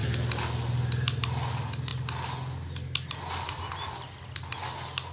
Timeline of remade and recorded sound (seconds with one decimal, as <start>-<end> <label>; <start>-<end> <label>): 0.0-5.1 recorded